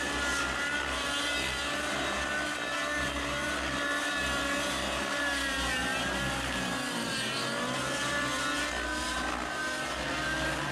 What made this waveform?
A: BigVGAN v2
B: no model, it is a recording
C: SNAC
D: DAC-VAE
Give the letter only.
B